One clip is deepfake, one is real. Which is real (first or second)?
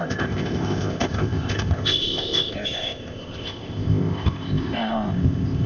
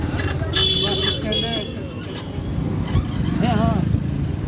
second